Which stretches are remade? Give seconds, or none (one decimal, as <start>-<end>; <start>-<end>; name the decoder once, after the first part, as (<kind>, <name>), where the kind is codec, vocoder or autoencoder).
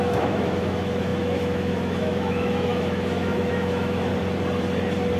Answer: 0.0-4.1 (autoencoder, DAC-VAE)